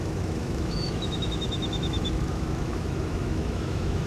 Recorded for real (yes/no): no